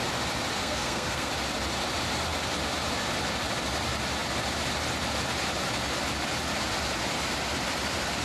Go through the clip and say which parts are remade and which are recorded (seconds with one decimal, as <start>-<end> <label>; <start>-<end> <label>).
0.0-0.6 recorded; 0.6-1.3 remade; 1.3-8.2 recorded